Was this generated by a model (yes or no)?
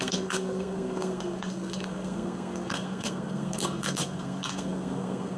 yes